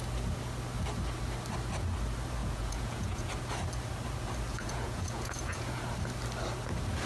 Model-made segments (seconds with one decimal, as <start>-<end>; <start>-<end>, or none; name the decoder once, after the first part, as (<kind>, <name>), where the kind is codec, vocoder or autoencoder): 2.4-3.3 (vocoder, Vocos); 4.5-5.8